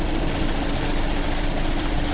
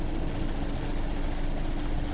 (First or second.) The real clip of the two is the second